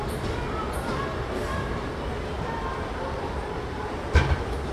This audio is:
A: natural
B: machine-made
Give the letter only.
A